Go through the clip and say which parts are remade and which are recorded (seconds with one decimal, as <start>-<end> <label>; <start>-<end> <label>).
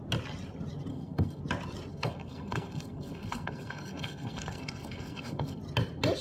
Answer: 0.0-0.9 recorded; 0.9-1.4 remade; 1.4-1.9 recorded; 1.9-5.6 remade; 5.6-6.2 recorded